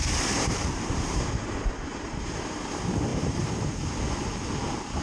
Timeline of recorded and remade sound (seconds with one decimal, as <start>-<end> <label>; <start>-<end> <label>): 0.0-2.4 remade; 2.4-3.1 recorded; 3.1-3.9 remade; 3.9-5.0 recorded